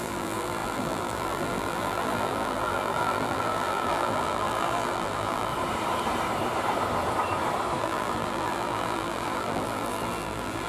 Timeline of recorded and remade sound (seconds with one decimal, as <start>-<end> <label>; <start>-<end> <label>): 0.0-5.5 remade; 5.5-7.8 recorded; 7.8-10.7 remade